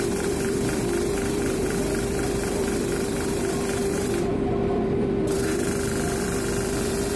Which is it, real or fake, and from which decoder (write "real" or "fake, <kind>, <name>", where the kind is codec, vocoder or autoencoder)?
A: fake, vocoder, BigVGAN v2